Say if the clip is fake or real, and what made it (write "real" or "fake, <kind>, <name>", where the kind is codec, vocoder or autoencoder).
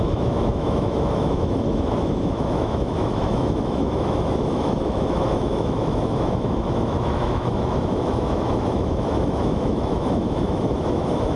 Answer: fake, autoencoder, DAC-VAE